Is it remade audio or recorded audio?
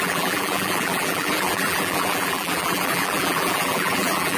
remade